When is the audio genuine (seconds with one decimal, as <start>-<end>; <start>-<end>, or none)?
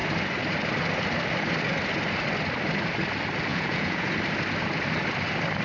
0.0-3.5; 4.1-5.6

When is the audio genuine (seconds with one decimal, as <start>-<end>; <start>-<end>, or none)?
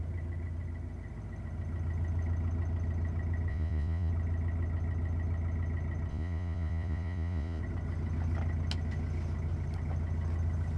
0.0-3.5; 4.1-6.1; 7.6-10.8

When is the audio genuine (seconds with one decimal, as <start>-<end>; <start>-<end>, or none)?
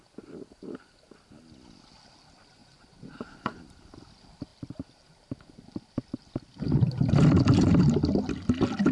0.0-2.6; 3.6-8.9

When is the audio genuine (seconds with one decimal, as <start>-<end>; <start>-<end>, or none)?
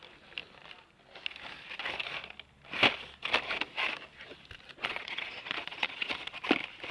0.0-4.8; 6.1-6.9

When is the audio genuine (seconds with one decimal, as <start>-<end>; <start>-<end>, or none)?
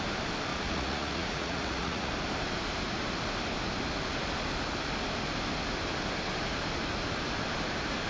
0.0-0.5; 2.1-8.1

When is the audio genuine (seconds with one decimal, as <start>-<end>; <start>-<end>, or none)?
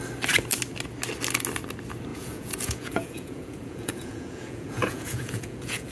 0.0-2.1